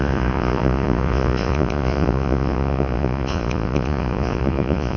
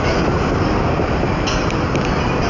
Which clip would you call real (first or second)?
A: second